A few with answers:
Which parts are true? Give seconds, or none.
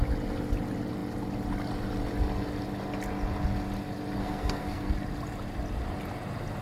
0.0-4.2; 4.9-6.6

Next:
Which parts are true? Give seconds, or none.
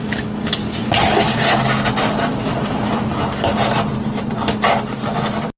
0.0-5.6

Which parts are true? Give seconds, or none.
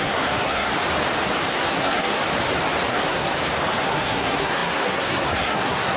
0.7-1.5; 2.2-2.9; 3.3-3.8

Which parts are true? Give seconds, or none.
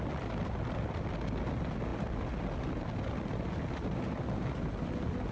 0.0-5.3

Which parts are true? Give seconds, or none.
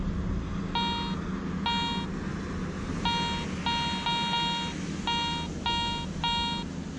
0.0-7.0